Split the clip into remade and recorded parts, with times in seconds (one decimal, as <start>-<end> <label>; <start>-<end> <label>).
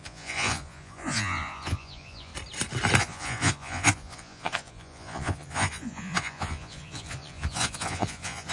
0.0-2.3 remade; 2.3-3.0 recorded; 3.0-8.5 remade